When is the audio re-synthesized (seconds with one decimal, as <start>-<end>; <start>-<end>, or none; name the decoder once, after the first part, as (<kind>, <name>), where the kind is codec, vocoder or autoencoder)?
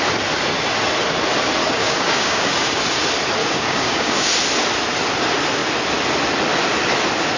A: 1.6-2.8 (codec, DAC); 3.4-4.3